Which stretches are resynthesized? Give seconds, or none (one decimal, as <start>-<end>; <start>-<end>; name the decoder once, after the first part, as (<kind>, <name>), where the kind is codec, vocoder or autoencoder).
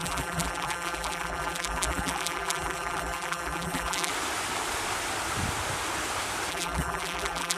0.0-4.1 (vocoder, BigVGAN v2); 6.5-7.6